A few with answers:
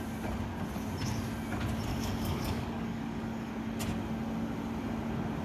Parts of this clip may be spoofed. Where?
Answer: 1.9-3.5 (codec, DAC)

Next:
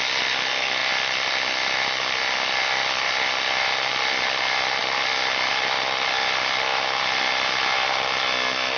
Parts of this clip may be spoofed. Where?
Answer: none

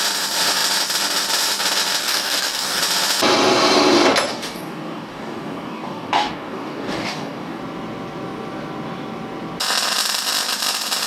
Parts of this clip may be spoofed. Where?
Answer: 2.0-2.8 (codec, DAC); 4.3-7.6